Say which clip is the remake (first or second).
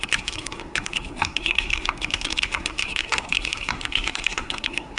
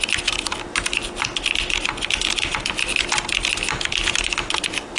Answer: first